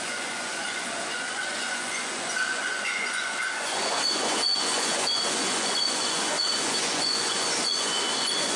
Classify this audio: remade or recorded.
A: remade